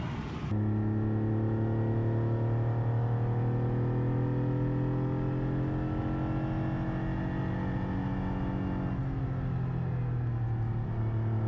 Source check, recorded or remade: recorded